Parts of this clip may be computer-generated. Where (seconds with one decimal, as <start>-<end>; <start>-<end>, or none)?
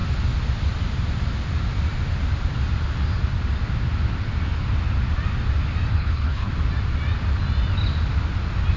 5.9-6.5